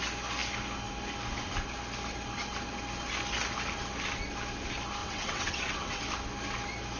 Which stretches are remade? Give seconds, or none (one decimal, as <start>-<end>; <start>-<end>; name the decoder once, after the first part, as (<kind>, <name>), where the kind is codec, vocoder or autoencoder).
5.0-6.0 (vocoder, WaveNeXt)